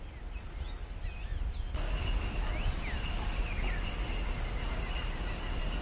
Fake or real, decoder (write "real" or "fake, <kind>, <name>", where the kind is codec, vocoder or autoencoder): real